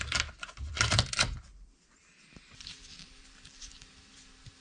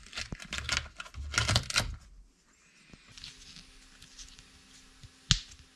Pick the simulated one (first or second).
first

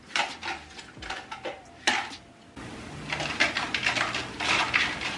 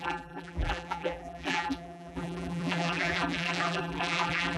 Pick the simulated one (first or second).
second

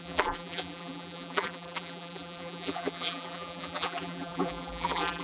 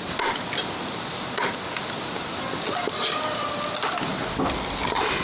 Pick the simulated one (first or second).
first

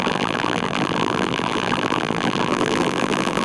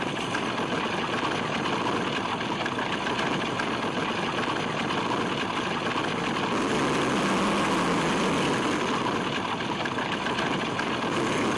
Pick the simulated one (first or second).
first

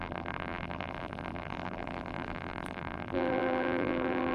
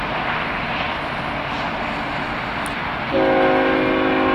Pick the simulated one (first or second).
first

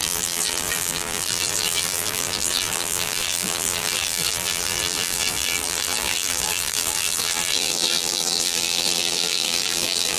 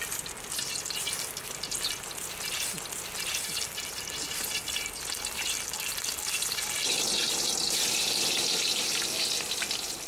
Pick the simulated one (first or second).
first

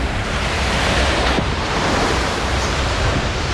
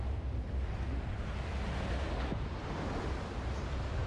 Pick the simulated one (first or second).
first